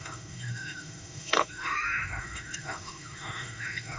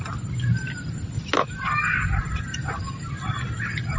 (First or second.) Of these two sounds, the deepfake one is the first